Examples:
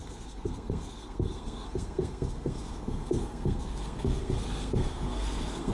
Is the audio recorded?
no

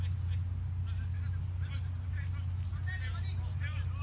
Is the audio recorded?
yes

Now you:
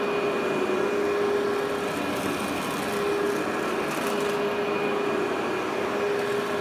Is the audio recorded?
yes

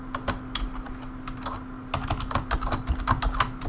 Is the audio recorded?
yes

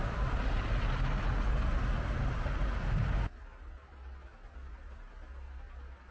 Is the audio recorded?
yes